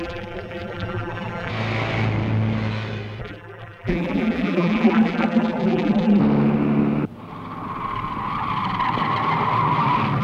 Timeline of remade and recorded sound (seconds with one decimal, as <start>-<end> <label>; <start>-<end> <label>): 0.0-1.5 remade; 1.5-3.2 recorded; 3.2-6.2 remade; 6.2-10.2 recorded